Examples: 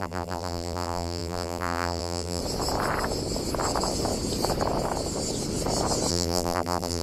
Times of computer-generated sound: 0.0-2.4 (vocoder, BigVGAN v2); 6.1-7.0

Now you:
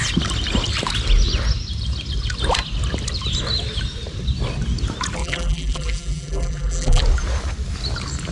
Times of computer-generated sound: 5.2-7.0 (vocoder, BigVGAN v2)

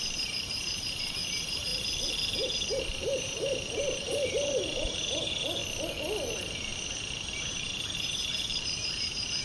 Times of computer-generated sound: 0.0-1.7 (vocoder, BigVGAN v2); 2.7-5.6; 6.3-6.7; 7.4-9.4